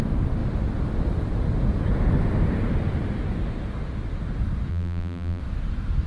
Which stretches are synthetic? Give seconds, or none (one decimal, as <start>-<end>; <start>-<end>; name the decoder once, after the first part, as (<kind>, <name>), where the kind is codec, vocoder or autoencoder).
4.7-5.4 (vocoder, BigVGAN v2)

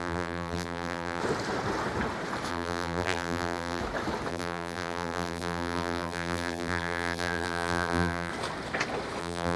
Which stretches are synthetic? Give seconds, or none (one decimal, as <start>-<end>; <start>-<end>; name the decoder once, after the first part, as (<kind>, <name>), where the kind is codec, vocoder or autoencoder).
0.0-1.2 (vocoder, BigVGAN v2); 2.5-3.8; 4.3-8.3; 9.2-9.6

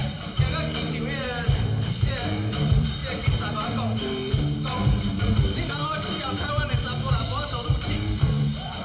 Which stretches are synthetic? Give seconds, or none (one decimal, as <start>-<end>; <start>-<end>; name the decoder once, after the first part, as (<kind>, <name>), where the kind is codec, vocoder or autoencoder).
0.0-8.8 (vocoder, BigVGAN v2)

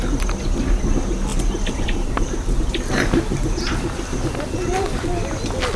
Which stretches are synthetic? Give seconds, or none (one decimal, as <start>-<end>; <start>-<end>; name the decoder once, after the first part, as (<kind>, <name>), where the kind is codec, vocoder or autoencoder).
1.3-4.8 (vocoder, BigVGAN v2)

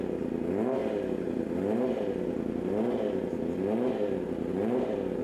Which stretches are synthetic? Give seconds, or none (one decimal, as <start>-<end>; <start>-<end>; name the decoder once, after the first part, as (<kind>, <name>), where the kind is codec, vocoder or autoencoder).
none

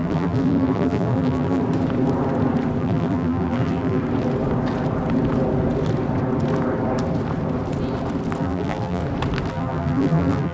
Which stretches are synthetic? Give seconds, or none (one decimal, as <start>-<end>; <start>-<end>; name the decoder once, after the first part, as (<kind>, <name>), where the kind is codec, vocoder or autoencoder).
0.0-1.6 (vocoder, BigVGAN v2); 2.8-4.0; 8.4-9.0; 9.5-10.5

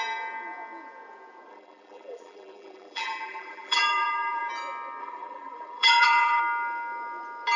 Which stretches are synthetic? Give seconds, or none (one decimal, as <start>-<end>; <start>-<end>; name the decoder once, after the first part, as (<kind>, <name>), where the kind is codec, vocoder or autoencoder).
1.5-4.5 (vocoder, BigVGAN v2); 5.0-6.4

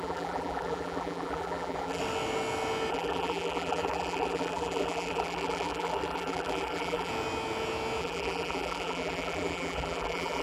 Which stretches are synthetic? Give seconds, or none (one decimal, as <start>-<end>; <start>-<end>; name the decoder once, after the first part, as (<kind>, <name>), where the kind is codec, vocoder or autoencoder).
0.0-2.0 (vocoder, BigVGAN v2); 2.9-7.1; 8.0-10.4